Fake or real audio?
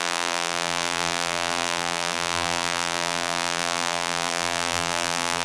fake